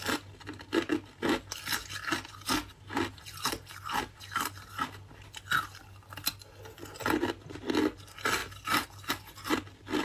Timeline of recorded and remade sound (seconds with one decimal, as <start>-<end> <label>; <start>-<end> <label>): 0.0-10.0 recorded